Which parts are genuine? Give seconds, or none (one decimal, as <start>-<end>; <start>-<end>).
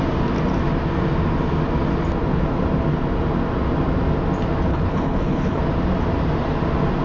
0.0-4.7; 5.6-7.0